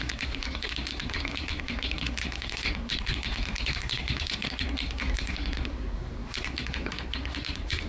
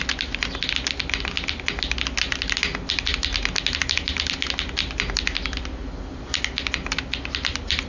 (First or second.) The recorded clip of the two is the second